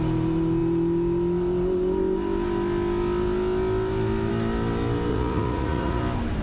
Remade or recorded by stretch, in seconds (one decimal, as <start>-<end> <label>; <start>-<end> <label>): 0.0-5.1 recorded; 5.1-6.0 remade; 6.0-6.4 recorded